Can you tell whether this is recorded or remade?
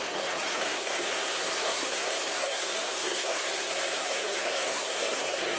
remade